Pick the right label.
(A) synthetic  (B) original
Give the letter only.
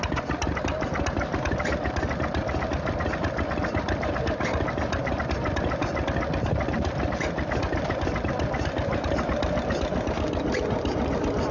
B